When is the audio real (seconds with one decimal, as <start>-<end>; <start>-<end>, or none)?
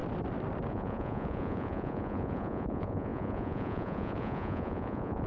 0.0-0.7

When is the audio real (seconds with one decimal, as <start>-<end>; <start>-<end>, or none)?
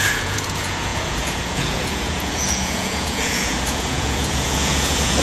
none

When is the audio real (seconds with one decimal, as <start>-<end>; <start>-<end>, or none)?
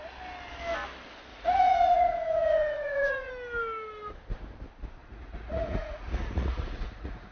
0.0-1.3; 3.3-5.0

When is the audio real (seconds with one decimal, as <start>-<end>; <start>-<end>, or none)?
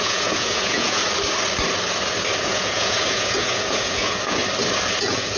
1.0-2.4; 4.4-5.0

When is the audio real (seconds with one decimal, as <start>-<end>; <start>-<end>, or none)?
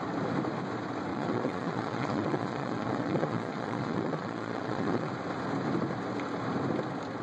0.0-1.1; 5.1-7.2